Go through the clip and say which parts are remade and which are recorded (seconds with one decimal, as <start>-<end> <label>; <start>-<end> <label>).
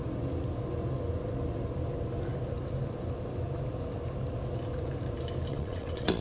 0.0-5.5 recorded; 5.5-6.2 remade